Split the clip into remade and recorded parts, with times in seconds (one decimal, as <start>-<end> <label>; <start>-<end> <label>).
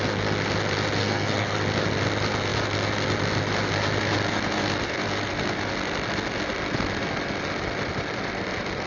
0.0-1.0 recorded; 1.0-1.6 remade; 1.6-8.9 recorded